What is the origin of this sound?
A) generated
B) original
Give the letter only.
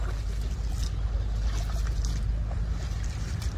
B